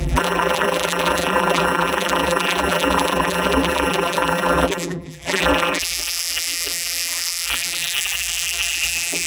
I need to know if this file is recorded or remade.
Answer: remade